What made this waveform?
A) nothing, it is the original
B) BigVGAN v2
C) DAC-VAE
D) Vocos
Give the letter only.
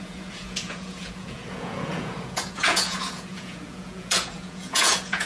D